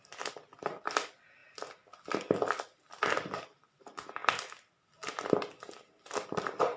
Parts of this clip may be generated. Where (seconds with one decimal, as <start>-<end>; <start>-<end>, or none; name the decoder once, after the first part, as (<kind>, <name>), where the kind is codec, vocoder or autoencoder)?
none